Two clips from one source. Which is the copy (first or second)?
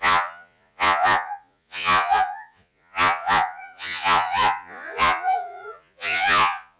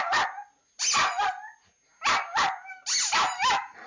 first